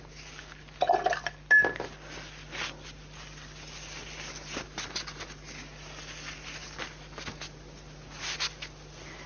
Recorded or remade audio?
recorded